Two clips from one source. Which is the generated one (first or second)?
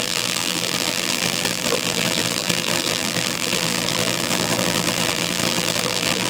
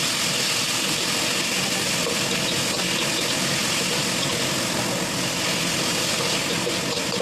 first